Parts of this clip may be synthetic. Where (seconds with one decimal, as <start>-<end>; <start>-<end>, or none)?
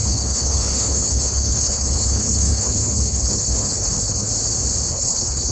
0.0-4.3; 4.9-5.5